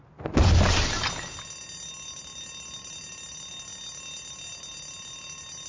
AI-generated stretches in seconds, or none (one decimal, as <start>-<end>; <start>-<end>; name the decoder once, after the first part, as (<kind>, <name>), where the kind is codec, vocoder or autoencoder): none